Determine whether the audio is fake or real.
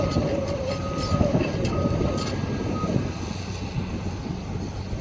real